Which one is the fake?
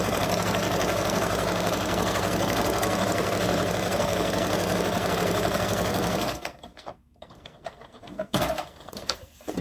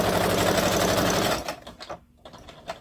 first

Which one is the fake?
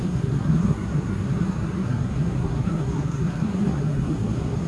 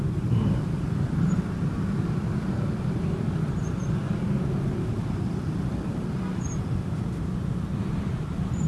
first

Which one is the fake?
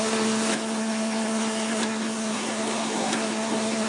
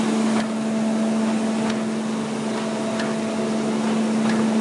first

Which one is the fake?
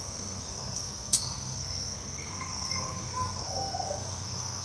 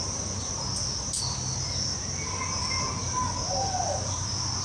first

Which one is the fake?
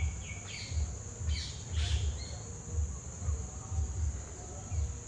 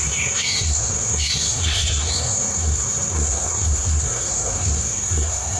second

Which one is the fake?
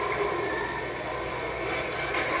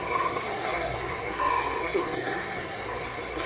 second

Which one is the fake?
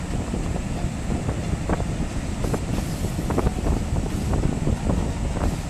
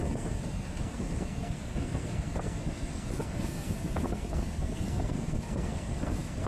second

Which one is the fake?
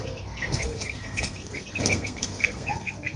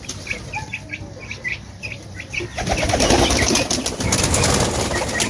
first